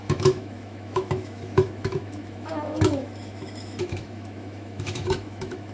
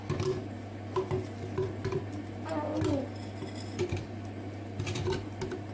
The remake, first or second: first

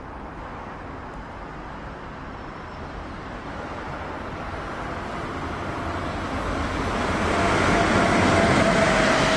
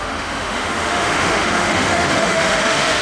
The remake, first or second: second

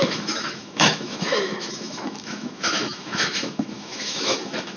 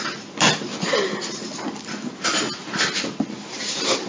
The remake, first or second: first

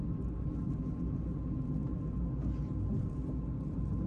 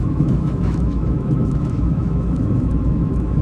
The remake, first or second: second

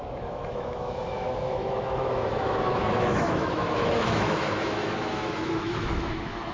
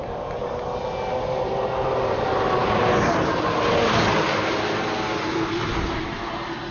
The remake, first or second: first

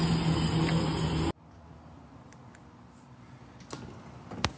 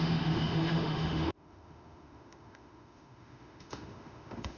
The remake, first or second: second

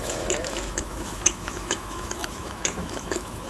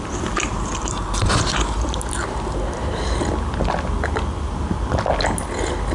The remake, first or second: first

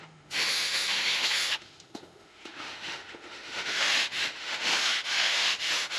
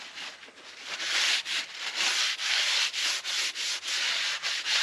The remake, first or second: first